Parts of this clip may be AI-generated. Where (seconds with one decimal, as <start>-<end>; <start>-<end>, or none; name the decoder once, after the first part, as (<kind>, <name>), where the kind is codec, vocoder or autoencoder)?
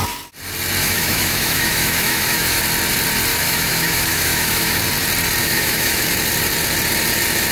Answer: 0.8-2.6 (autoencoder, DAC-VAE); 3.3-4.8; 5.4-6.1